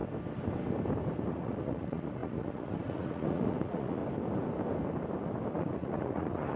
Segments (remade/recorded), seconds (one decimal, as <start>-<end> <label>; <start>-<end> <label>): 0.0-1.3 recorded; 1.3-4.0 remade; 4.0-5.5 recorded; 5.5-6.6 remade

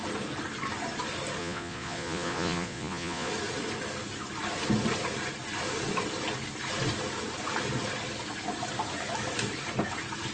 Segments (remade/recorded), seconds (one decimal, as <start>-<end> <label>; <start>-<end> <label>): 0.0-1.4 recorded; 1.4-3.3 remade; 3.3-10.3 recorded